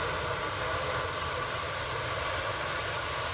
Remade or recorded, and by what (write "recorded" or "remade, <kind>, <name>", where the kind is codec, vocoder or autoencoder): recorded